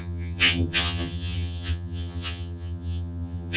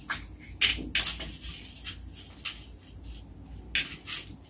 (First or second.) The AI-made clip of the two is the first